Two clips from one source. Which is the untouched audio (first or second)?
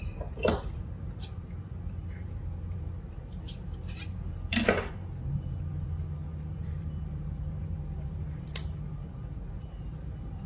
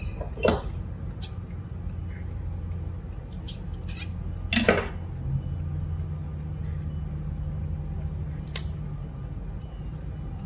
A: second